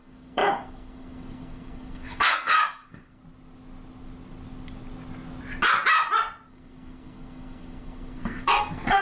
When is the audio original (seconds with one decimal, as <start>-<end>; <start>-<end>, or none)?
3.2-6.5